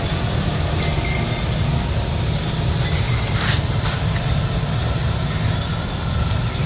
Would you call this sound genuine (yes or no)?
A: yes